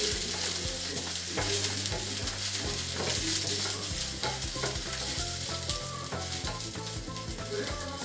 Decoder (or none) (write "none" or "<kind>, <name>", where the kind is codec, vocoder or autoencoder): none